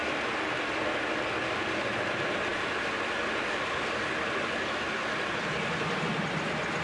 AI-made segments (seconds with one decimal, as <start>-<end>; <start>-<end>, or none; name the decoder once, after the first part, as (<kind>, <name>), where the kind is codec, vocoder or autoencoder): none